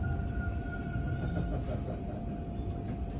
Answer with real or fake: real